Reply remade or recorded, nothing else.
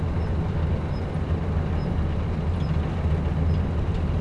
recorded